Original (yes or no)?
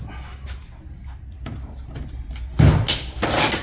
yes